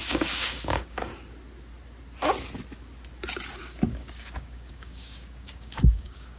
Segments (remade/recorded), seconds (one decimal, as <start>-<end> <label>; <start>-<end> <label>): 0.0-1.1 remade; 1.1-3.6 recorded; 3.6-6.4 remade